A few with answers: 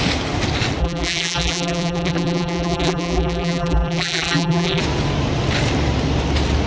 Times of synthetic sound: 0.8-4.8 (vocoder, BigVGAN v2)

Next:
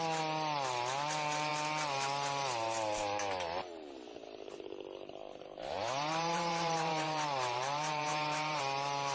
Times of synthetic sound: 5.2-8.6 (vocoder, BigVGAN v2)

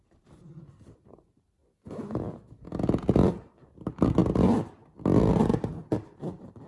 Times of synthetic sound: 0.0-1.6 (vocoder, BigVGAN v2); 3.3-4.2; 5.3-6.7